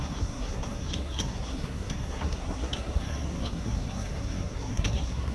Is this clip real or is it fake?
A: fake